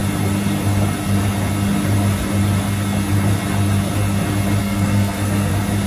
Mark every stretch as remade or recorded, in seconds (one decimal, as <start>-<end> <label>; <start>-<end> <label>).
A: 0.0-4.6 recorded; 4.6-5.5 remade; 5.5-5.9 recorded